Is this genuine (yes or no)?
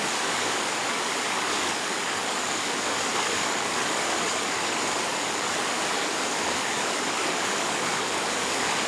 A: no